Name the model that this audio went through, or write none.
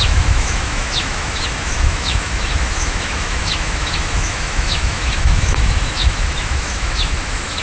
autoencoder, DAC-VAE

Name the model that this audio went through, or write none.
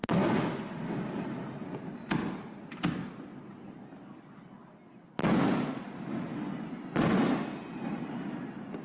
none